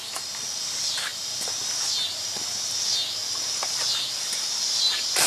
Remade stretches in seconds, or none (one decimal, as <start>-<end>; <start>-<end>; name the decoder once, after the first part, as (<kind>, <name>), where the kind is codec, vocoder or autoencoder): 0.0-1.1 (vocoder, BigVGAN v2); 4.3-5.3